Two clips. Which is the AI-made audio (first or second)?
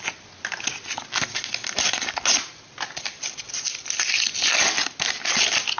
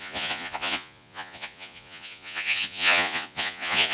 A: second